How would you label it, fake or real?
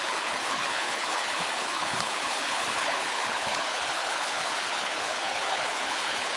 fake